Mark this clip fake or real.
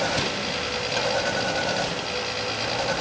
real